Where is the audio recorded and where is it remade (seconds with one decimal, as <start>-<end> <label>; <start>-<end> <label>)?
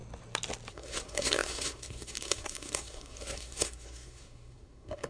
0.0-0.7 recorded; 0.7-5.1 remade